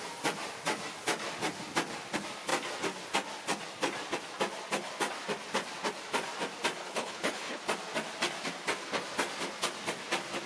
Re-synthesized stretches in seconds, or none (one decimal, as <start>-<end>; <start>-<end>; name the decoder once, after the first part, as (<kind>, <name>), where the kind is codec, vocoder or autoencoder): 6.8-7.6 (codec, HILCodec)